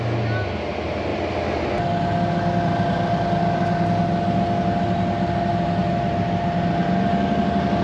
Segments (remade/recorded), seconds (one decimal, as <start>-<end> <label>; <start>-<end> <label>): 0.0-7.8 recorded